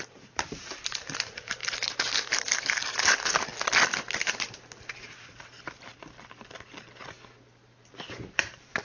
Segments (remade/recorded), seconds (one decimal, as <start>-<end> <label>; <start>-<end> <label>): 0.0-1.6 remade; 1.6-2.4 recorded; 2.4-3.5 remade; 3.5-5.0 recorded; 5.0-5.9 remade; 5.9-8.3 recorded; 8.3-8.8 remade